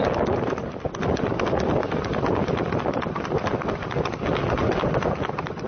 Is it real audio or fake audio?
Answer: real